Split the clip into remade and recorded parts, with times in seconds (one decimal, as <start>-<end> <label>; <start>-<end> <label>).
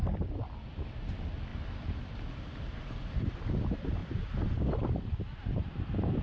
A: 0.0-1.5 recorded; 1.5-2.8 remade; 2.8-4.0 recorded; 4.0-5.7 remade; 5.7-6.2 recorded